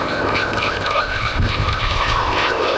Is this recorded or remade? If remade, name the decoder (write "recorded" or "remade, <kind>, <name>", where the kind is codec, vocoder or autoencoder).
remade, codec, ZipCodec